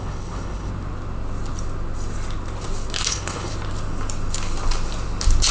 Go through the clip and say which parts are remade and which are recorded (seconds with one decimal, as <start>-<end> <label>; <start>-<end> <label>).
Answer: 0.0-0.7 remade; 0.7-3.1 recorded; 3.1-3.5 remade; 3.5-5.5 recorded